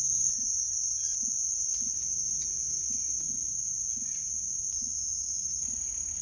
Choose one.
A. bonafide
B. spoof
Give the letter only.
A